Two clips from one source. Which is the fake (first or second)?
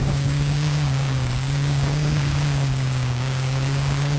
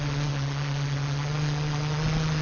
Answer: first